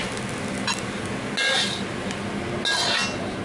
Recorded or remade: recorded